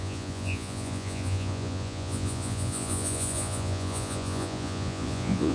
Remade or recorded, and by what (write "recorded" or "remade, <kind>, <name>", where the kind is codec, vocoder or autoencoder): remade, vocoder, Vocos